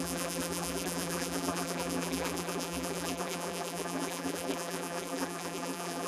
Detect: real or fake fake